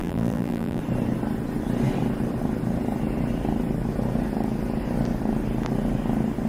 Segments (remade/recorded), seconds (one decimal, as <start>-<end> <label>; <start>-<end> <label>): 0.0-0.8 remade; 0.8-6.5 recorded